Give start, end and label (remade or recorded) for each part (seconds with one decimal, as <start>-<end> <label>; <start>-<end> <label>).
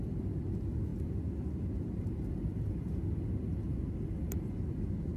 0.0-5.2 recorded